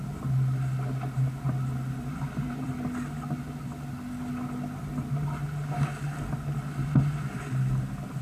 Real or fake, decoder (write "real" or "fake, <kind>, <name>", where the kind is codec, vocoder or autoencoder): real